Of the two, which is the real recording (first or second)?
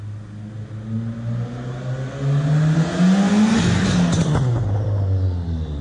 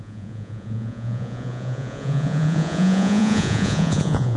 first